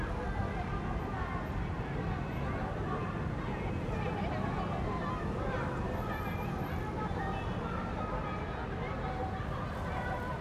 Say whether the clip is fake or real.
real